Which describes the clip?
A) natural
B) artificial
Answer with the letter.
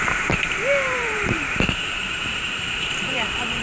B